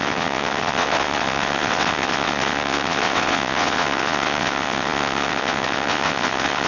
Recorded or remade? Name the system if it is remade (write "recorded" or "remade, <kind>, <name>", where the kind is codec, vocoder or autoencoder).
remade, vocoder, WaveNeXt